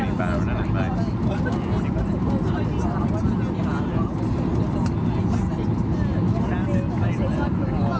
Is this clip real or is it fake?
real